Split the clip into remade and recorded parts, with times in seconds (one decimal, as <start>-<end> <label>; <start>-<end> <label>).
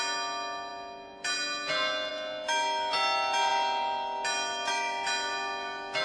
0.0-6.0 recorded